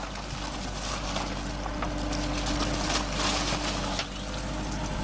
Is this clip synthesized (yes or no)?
no